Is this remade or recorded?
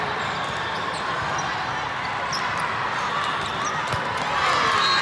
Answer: recorded